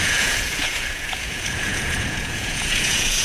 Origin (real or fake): fake